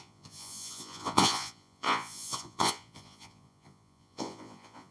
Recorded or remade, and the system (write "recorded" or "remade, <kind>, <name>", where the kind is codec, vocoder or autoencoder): remade, vocoder, Vocos